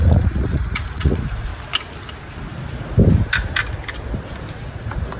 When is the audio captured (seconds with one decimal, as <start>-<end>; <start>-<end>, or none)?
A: 1.5-4.6